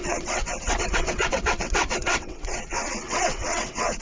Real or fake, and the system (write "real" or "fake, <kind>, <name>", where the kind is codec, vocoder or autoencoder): fake, vocoder, WaveNeXt